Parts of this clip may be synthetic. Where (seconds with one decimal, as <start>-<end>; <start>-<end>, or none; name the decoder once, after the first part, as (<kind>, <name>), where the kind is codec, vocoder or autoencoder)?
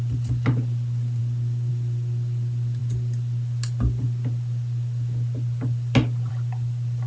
none